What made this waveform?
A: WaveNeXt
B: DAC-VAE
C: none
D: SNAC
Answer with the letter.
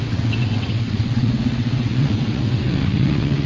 A